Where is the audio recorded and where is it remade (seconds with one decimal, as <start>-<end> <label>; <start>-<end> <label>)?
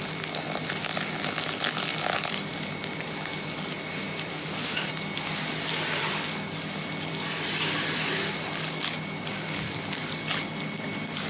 0.0-4.3 recorded; 4.3-4.9 remade; 4.9-11.3 recorded